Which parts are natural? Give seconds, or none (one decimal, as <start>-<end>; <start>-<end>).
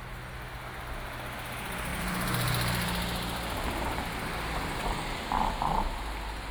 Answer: 0.0-6.5